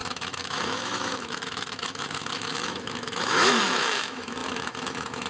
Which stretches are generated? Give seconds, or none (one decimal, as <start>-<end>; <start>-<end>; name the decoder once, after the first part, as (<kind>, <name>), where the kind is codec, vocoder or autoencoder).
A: 0.0-5.3 (autoencoder, DAC-VAE)

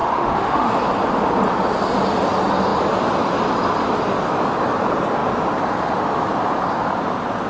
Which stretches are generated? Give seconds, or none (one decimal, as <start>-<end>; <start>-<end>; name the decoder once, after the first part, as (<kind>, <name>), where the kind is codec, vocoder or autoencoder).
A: 0.0-0.7 (autoencoder, DAC-VAE)